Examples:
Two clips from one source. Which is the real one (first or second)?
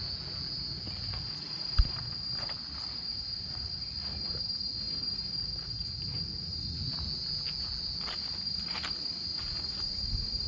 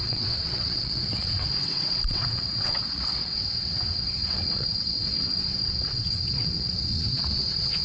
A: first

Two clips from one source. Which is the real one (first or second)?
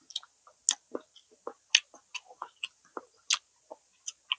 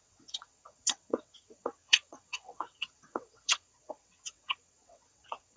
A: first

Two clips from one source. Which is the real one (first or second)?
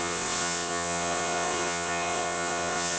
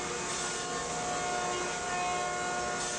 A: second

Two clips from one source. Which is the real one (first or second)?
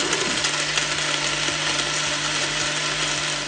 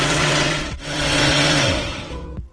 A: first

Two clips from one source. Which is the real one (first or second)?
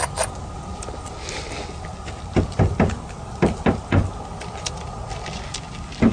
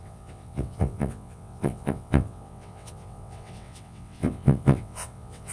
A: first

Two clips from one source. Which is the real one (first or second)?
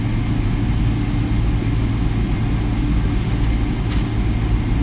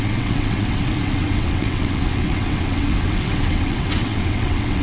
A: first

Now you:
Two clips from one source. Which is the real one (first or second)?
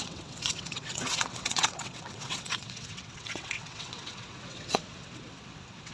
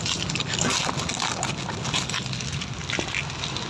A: second